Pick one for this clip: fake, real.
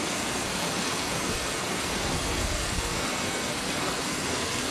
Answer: fake